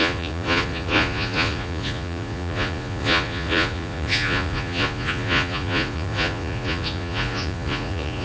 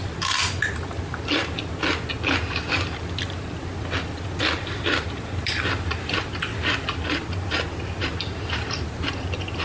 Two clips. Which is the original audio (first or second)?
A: second